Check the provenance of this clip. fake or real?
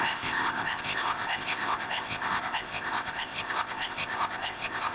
fake